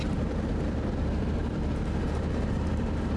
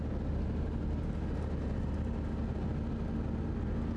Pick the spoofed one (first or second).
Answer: first